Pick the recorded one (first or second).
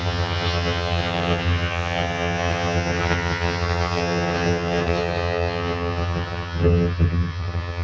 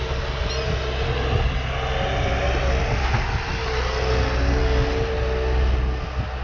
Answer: second